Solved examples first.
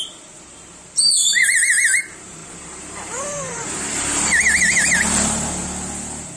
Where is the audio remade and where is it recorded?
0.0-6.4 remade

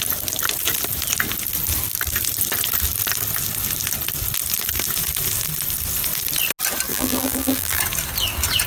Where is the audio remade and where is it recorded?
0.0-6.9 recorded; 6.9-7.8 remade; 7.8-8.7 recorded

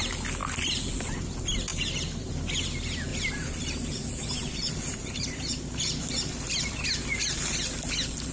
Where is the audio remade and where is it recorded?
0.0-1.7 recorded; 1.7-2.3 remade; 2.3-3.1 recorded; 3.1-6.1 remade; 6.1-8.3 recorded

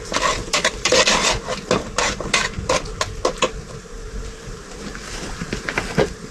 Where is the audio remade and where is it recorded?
0.0-0.4 recorded; 0.4-1.5 remade; 1.5-6.3 recorded

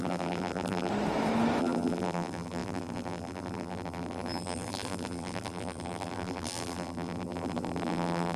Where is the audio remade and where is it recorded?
0.0-0.9 remade; 0.9-1.6 recorded; 1.6-8.4 remade

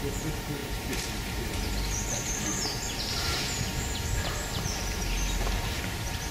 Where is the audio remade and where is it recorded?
0.0-6.3 remade

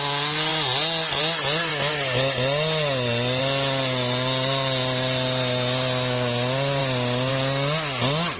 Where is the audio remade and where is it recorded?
0.0-8.4 recorded

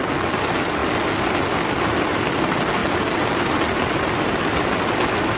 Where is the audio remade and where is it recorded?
0.0-5.4 recorded